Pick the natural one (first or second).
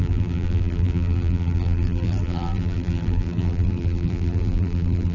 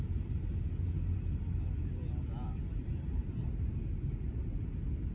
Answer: second